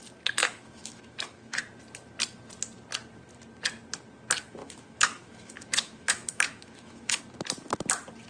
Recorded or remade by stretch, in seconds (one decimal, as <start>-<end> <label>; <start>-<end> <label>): 0.0-0.4 recorded; 0.4-1.6 remade; 1.6-4.6 recorded; 4.6-7.2 remade; 7.2-8.3 recorded